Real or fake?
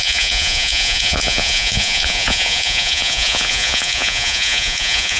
fake